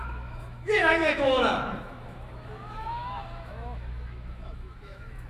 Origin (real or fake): fake